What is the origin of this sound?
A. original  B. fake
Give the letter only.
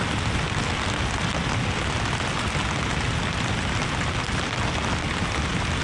A